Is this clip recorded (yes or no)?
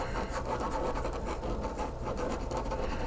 yes